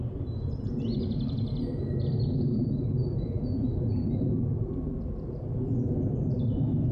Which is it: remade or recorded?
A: remade